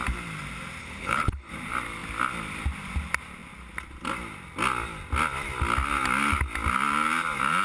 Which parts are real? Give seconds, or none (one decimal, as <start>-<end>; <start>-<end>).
0.0-0.8; 1.5-7.6